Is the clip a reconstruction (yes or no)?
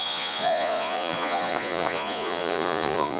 yes